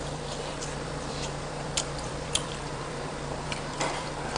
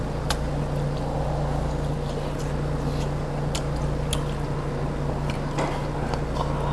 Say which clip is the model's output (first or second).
first